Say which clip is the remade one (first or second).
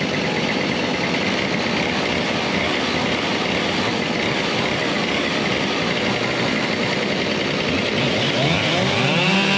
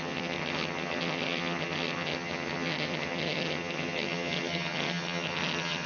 second